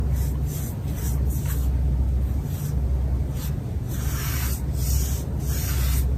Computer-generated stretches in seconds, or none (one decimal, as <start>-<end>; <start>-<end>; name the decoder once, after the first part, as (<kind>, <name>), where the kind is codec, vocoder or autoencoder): none